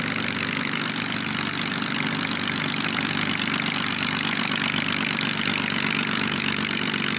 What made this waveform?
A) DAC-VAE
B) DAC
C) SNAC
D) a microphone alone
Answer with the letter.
D